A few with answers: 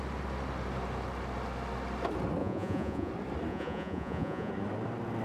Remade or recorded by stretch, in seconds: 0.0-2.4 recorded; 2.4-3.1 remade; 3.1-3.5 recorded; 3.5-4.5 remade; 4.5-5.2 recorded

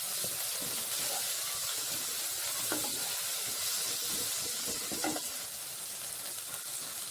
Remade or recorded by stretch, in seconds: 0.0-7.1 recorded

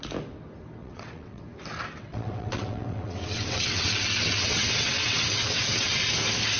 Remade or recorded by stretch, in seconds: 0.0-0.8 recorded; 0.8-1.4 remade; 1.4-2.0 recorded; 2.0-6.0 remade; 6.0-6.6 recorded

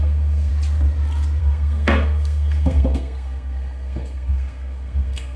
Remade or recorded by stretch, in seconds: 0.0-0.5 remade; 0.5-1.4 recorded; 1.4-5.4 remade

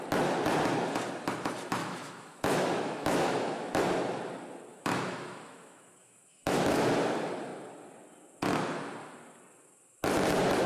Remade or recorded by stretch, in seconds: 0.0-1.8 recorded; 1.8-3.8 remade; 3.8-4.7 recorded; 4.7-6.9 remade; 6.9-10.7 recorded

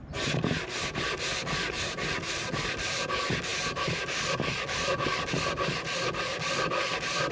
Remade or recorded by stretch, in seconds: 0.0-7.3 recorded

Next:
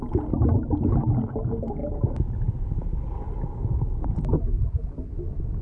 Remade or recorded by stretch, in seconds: 0.0-5.6 recorded

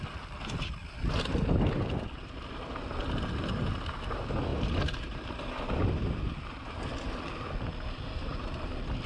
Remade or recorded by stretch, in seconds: 0.0-9.1 recorded